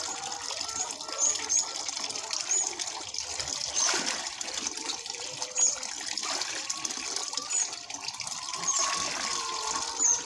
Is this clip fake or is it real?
real